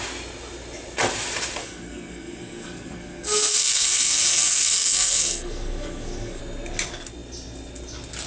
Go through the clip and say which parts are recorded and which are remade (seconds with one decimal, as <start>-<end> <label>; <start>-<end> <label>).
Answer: 0.0-1.6 recorded; 1.6-6.4 remade; 6.4-8.3 recorded